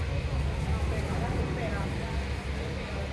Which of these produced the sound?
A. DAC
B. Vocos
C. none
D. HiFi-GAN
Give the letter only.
C